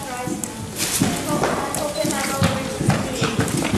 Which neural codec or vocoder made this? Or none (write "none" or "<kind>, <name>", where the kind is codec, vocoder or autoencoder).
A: none